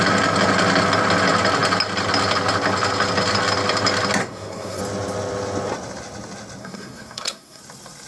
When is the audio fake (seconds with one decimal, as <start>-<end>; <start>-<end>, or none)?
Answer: 4.2-4.8; 6.6-7.6